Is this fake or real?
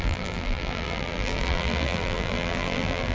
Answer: fake